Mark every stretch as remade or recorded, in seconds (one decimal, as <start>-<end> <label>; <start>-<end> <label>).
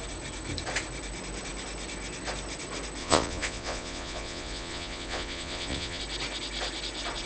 0.0-3.0 recorded; 3.0-6.0 remade; 6.0-7.3 recorded